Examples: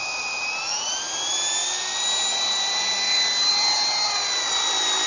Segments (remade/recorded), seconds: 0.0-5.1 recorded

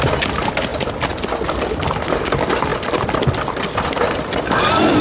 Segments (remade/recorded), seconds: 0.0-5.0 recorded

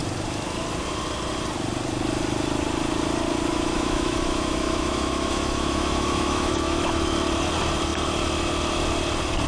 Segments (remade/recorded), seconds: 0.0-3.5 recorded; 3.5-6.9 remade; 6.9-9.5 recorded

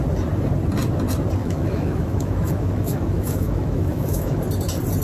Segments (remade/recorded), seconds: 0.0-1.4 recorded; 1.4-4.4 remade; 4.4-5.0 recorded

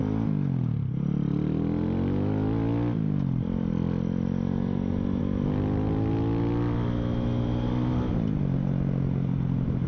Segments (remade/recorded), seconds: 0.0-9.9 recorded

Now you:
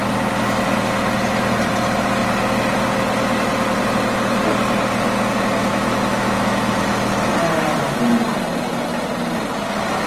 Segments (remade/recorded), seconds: 0.0-5.6 recorded; 5.6-7.3 remade; 7.3-10.1 recorded